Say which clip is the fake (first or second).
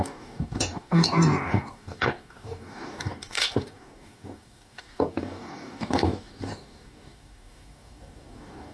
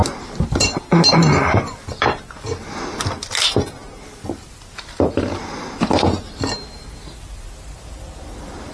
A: first